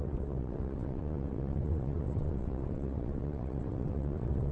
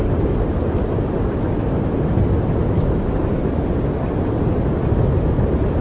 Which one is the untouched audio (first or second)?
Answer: second